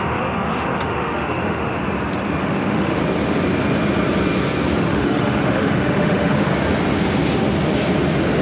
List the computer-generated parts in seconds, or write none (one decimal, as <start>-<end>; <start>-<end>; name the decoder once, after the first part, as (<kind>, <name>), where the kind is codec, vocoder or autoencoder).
0.0-1.8 (autoencoder, DAC-VAE); 2.4-3.0; 4.7-6.5